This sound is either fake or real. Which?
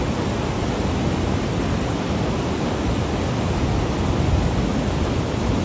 real